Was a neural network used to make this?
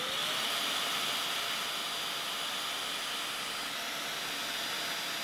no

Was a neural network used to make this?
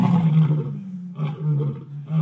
no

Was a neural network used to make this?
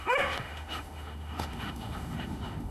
yes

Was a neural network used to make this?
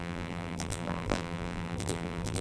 yes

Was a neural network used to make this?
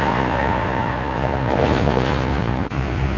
yes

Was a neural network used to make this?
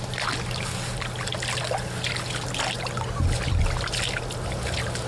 no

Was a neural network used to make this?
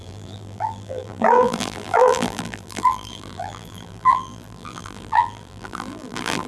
yes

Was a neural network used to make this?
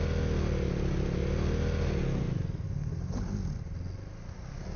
no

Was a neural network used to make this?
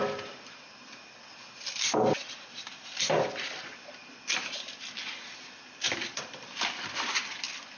no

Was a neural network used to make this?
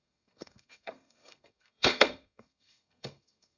yes